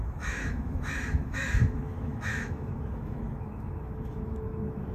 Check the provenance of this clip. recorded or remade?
remade